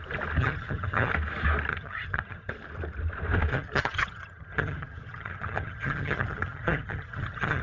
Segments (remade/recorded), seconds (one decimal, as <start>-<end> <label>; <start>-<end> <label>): 0.0-0.4 recorded; 0.4-1.1 remade; 1.1-1.7 recorded; 1.7-2.5 remade; 2.5-3.5 recorded; 3.5-7.6 remade